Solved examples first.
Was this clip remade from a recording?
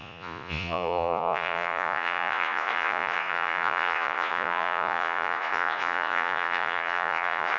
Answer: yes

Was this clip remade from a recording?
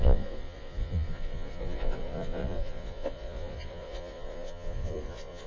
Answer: yes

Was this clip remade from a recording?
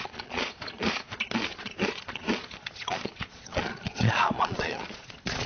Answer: yes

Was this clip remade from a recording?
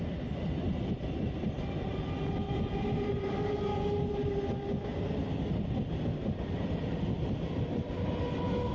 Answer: no